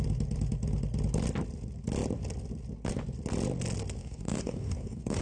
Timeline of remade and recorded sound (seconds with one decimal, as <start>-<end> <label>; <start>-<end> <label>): 0.0-4.0 recorded; 4.0-5.2 remade